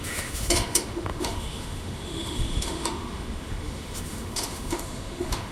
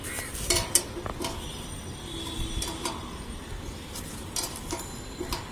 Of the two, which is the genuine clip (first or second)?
second